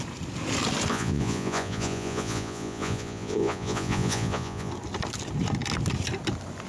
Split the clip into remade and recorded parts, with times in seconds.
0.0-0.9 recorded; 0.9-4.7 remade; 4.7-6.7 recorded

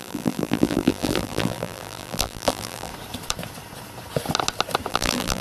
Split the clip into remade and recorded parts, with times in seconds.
0.0-2.9 remade; 2.9-4.9 recorded; 4.9-5.4 remade

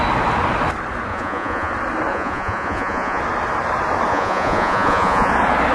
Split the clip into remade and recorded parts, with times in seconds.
0.0-1.1 recorded; 1.1-1.7 remade; 1.7-2.1 recorded; 2.1-3.2 remade; 3.2-4.1 recorded; 4.1-5.3 remade; 5.3-5.7 recorded

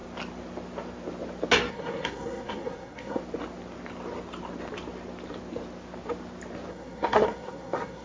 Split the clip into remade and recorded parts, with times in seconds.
0.0-1.7 recorded; 1.7-3.2 remade; 3.2-6.7 recorded; 6.7-8.0 remade

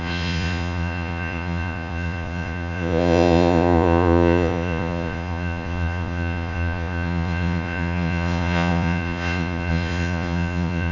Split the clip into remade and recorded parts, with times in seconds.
0.0-10.9 remade

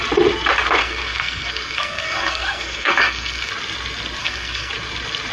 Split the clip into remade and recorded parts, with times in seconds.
0.0-0.8 recorded; 0.8-3.5 remade; 3.5-4.2 recorded; 4.2-4.7 remade; 4.7-5.3 recorded

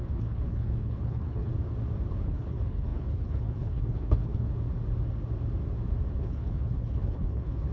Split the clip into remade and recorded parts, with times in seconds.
0.0-1.5 remade; 1.5-2.1 recorded; 2.1-4.5 remade; 4.5-6.1 recorded; 6.1-7.7 remade

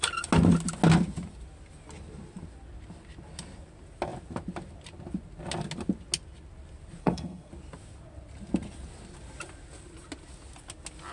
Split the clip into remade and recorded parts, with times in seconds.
0.0-7.0 recorded; 7.0-7.5 remade; 7.5-11.1 recorded